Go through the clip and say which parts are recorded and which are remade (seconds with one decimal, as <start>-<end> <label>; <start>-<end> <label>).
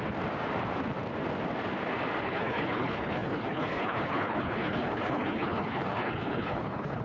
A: 0.0-2.2 recorded; 2.2-7.0 remade